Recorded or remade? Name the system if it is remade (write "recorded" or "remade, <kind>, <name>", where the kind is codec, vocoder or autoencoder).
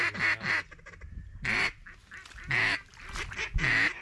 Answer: recorded